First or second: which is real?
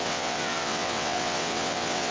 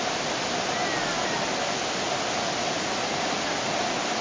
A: second